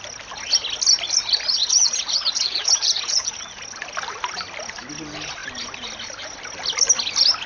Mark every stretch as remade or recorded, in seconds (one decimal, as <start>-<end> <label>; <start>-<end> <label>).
0.0-1.6 recorded; 1.6-3.6 remade; 3.6-7.5 recorded